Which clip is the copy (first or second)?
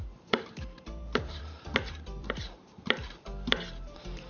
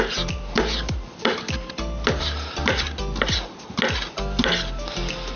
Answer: first